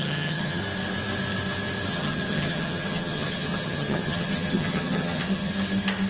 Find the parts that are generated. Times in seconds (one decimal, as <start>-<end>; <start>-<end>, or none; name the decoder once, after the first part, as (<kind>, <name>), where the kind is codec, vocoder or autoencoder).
0.0-0.6 (vocoder, HiFi-GAN); 1.9-5.5